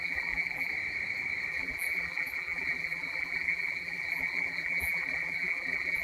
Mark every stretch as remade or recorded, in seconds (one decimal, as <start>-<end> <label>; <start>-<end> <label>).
0.0-0.7 remade; 0.7-1.5 recorded; 1.5-6.0 remade